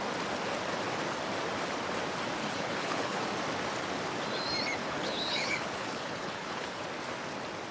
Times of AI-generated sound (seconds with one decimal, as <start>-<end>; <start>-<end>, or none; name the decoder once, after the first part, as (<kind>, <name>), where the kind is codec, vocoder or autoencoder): 2.4-3.2 (codec, HILCodec); 4.8-6.8